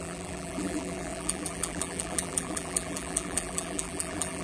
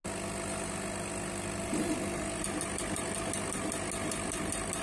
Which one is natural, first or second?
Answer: second